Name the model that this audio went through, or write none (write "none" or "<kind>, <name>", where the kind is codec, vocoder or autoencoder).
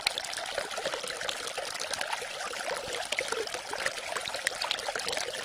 none